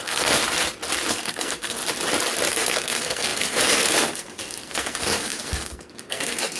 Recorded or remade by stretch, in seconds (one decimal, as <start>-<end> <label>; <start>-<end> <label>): 0.0-0.4 remade; 0.4-1.1 recorded; 1.1-1.8 remade; 1.8-2.5 recorded; 2.5-6.6 remade